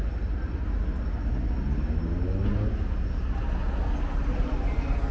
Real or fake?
real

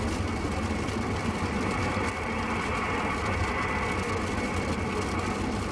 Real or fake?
real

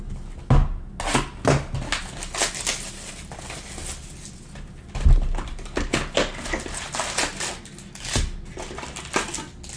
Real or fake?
real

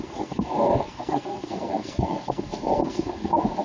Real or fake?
fake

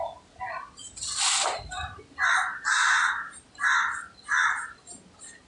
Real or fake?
real